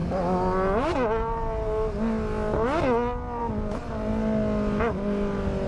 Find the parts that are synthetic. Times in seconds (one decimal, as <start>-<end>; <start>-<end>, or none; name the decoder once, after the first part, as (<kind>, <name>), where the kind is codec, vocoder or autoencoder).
none